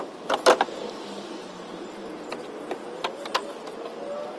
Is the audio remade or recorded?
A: recorded